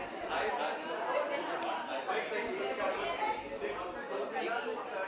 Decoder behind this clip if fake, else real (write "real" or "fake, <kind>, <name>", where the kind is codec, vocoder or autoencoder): real